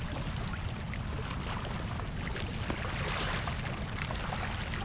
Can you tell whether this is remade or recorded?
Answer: recorded